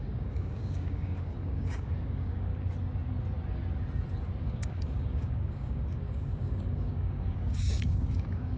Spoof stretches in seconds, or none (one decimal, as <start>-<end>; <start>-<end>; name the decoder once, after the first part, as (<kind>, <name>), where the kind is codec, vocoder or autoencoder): 0.0-2.5 (codec, DAC); 4.4-8.6